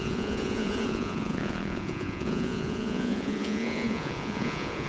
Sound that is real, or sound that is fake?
fake